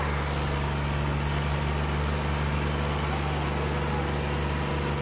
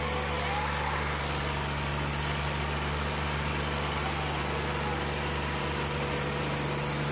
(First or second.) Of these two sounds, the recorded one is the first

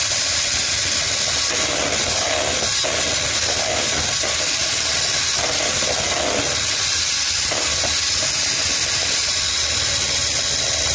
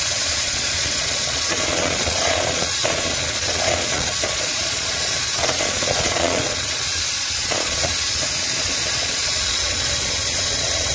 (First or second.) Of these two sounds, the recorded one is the first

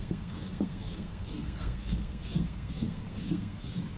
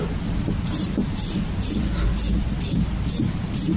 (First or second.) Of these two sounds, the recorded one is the second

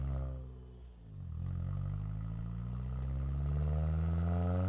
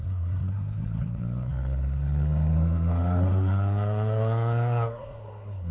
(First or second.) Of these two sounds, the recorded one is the first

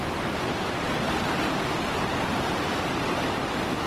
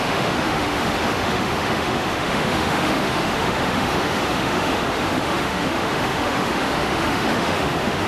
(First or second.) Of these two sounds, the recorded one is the first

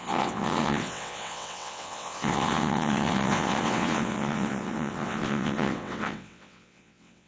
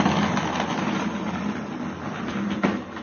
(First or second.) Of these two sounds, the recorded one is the second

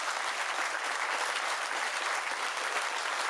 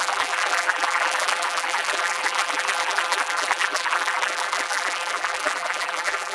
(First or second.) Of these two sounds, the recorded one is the first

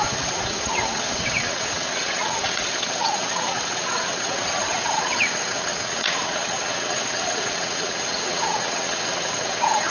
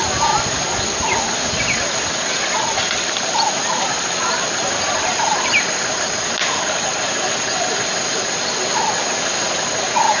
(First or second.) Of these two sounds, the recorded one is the second